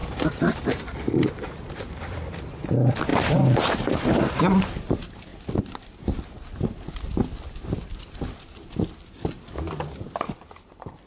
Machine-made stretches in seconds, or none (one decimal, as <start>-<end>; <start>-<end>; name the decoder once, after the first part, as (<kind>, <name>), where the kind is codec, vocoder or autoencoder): 0.0-5.3 (vocoder, BigVGAN v2); 6.0-7.1; 10.7-11.1